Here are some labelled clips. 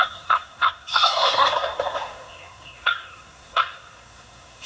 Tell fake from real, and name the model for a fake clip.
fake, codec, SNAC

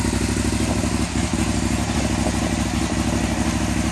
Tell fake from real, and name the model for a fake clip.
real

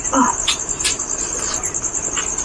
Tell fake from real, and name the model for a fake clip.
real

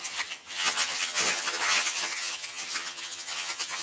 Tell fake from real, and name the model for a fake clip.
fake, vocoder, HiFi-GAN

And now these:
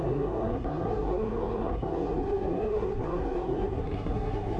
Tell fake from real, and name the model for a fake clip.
fake, codec, SNAC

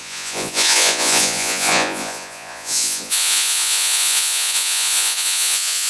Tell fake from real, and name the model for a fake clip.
fake, vocoder, Vocos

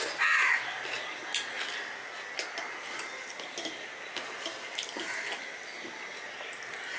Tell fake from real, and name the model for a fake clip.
real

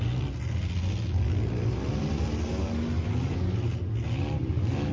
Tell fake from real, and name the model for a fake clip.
real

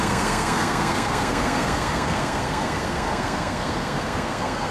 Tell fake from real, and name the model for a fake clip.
fake, codec, SNAC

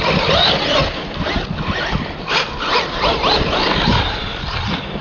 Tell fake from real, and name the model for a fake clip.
real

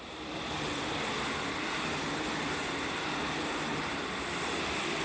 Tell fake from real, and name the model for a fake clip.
fake, vocoder, BigVGAN v2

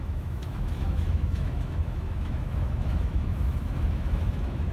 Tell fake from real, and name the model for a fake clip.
fake, autoencoder, DAC-VAE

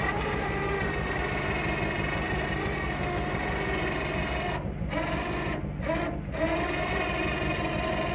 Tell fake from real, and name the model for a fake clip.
real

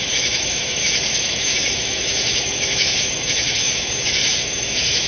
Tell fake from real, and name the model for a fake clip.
fake, autoencoder, DAC-VAE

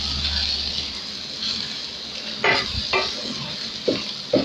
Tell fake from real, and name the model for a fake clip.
real